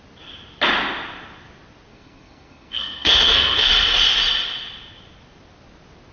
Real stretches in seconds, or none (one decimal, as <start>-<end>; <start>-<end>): 0.0-1.9; 3.7-6.1